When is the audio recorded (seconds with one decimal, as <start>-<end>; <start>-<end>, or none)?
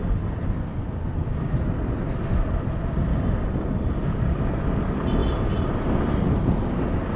0.0-3.1; 3.6-7.2